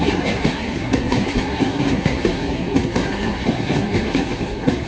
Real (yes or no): no